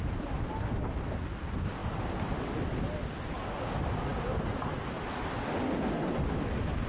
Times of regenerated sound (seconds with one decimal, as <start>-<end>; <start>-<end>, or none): none